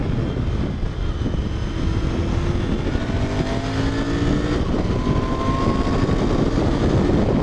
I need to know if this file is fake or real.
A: real